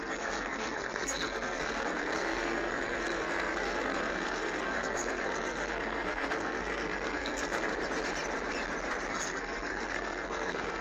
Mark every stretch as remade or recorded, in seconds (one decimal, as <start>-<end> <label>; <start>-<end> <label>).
0.0-7.7 remade; 7.7-9.1 recorded; 9.1-10.8 remade